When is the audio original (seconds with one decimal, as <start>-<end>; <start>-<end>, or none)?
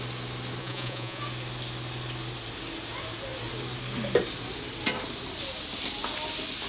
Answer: 0.0-0.6; 1.2-6.7